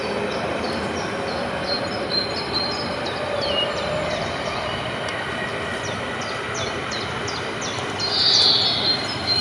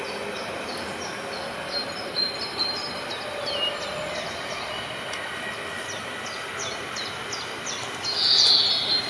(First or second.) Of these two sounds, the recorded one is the second